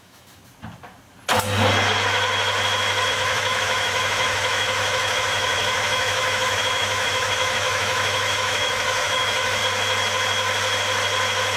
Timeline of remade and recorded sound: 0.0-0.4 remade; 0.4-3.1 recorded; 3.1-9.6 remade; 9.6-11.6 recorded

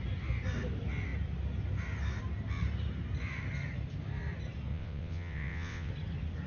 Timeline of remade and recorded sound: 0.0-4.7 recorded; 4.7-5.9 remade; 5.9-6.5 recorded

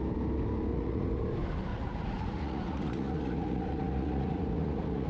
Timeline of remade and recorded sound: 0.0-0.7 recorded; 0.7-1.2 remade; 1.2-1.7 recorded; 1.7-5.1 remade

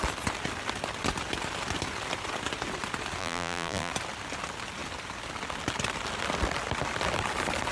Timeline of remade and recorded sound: 0.0-3.2 recorded; 3.2-3.9 remade; 3.9-7.7 recorded

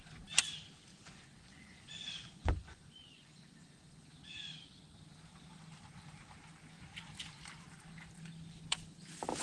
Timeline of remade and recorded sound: 0.0-0.9 recorded; 0.9-4.1 remade; 4.1-9.4 recorded

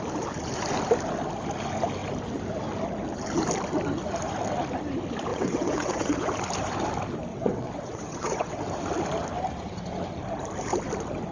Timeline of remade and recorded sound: 0.0-5.3 recorded; 5.3-6.3 remade; 6.3-7.3 recorded; 7.3-8.6 remade; 8.6-11.3 recorded

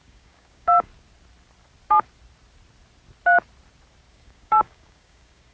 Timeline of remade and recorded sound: 0.0-0.9 remade; 0.9-4.1 recorded; 4.1-5.5 remade

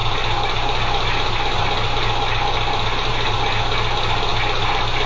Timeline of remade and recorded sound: 0.0-5.1 recorded